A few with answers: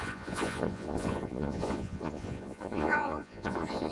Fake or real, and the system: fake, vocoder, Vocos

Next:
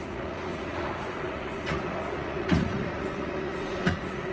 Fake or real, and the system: fake, vocoder, Vocos